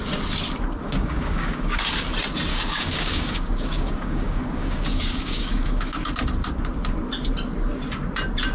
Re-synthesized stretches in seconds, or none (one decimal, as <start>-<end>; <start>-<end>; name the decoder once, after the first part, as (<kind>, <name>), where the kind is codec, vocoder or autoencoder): 0.8-1.9 (codec, DAC); 2.5-6.1